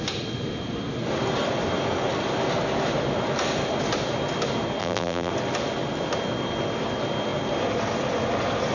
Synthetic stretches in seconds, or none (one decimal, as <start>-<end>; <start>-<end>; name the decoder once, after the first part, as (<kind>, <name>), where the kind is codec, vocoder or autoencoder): 4.8-5.3 (vocoder, BigVGAN v2)